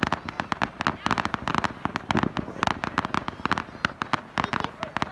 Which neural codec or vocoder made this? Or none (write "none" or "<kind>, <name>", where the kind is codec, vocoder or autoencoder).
none